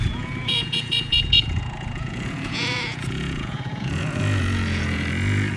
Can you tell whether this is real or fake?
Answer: fake